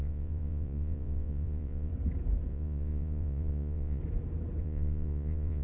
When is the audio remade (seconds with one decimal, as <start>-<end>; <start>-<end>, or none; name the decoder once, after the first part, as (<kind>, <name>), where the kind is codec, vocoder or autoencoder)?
0.0-1.9 (vocoder, Vocos); 2.5-4.0; 4.6-5.6